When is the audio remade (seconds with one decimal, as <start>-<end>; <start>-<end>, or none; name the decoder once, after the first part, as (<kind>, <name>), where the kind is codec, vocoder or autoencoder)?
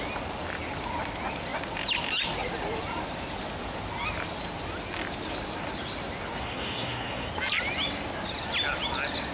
6.4-7.3 (codec, SNAC)